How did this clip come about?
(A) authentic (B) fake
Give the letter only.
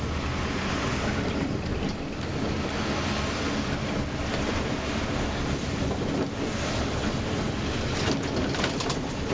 A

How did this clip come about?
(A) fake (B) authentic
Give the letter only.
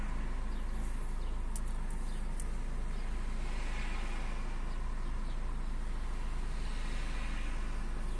B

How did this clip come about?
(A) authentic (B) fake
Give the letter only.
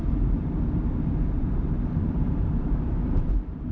B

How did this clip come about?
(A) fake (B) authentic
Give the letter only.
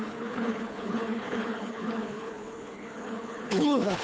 A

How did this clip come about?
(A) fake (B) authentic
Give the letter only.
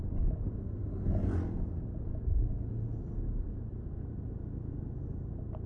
B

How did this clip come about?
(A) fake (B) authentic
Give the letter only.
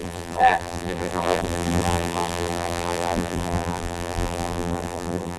A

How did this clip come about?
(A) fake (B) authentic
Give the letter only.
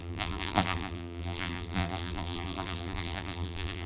A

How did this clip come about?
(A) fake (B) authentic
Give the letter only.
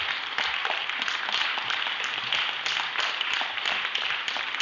B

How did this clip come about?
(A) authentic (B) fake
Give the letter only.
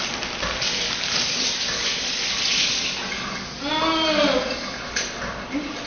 A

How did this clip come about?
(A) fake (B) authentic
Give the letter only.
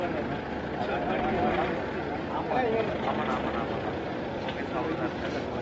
B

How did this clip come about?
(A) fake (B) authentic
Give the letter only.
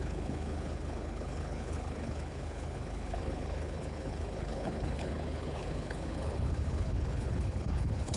A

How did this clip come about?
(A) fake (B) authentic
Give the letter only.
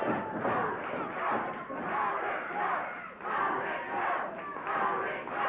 B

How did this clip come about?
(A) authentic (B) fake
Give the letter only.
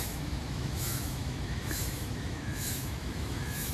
B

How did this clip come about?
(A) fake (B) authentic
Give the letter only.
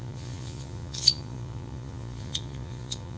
A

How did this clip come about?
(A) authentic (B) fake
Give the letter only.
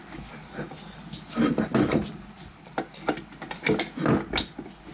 A